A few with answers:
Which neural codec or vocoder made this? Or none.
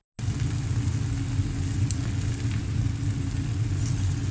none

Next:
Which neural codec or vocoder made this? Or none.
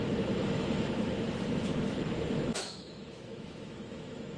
autoencoder, DAC-VAE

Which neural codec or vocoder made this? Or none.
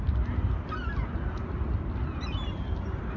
none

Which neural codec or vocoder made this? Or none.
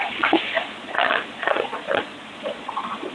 vocoder, Vocos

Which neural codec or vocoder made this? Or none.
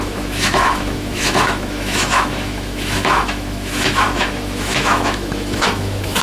autoencoder, DAC-VAE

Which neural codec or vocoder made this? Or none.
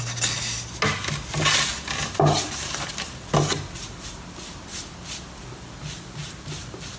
none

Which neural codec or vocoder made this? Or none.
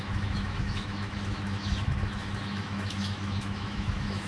autoencoder, DAC-VAE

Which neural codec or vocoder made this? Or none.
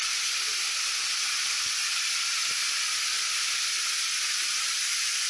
none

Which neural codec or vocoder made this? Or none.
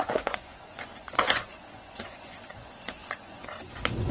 vocoder, Vocos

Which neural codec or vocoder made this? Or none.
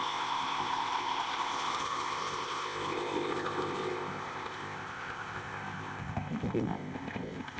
codec, ZipCodec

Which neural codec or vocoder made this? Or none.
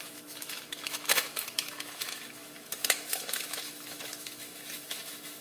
autoencoder, DAC-VAE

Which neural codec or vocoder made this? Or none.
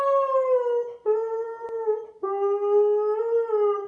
none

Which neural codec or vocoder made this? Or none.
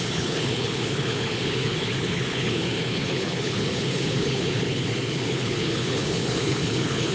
codec, HILCodec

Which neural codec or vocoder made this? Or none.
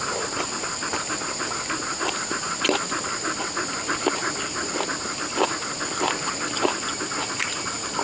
none